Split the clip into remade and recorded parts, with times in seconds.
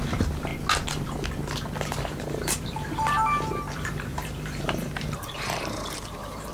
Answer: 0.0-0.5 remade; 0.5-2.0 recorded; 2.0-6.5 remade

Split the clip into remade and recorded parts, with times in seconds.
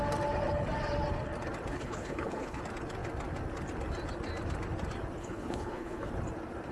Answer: 0.0-1.7 recorded; 1.7-2.6 remade; 2.6-5.2 recorded; 5.2-6.1 remade; 6.1-6.7 recorded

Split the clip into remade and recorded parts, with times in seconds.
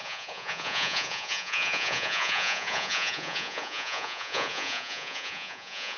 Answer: 0.0-6.0 remade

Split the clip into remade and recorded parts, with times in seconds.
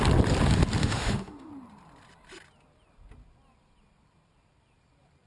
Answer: 0.0-0.8 recorded; 0.8-1.5 remade; 1.5-5.3 recorded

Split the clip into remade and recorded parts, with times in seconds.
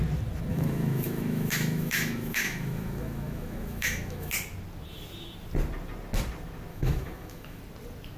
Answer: 0.0-0.5 recorded; 0.5-4.3 remade; 4.3-6.7 recorded; 6.7-7.6 remade; 7.6-8.2 recorded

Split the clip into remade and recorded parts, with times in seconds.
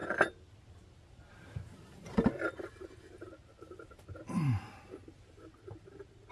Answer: 0.0-6.3 recorded